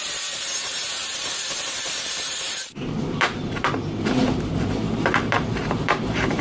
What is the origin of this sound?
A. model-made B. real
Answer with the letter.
A